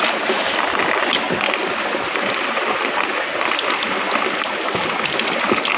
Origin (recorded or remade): recorded